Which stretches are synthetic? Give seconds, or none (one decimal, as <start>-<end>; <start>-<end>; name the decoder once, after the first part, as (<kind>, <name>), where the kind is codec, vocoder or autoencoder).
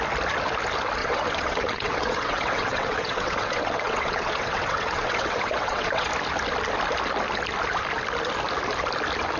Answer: 1.0-6.1 (vocoder, WaveNeXt)